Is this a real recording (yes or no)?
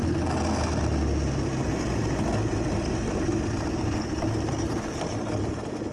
yes